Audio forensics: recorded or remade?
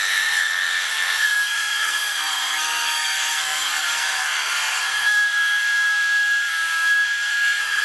remade